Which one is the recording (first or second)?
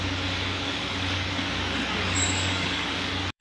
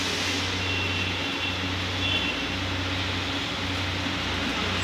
second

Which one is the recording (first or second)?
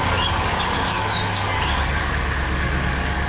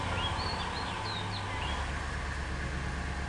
second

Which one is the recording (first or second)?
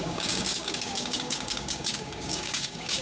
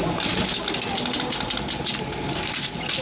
second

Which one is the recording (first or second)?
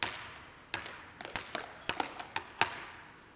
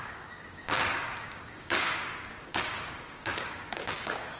first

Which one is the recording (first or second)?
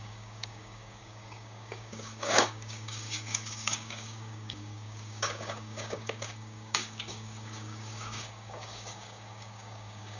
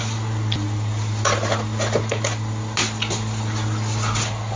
second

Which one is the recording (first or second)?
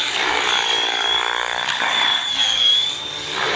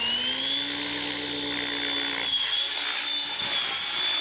second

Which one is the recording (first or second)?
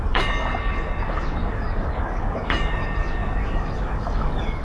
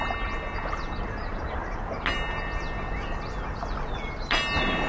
second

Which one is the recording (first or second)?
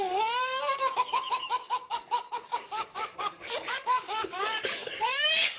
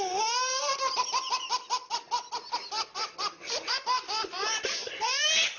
second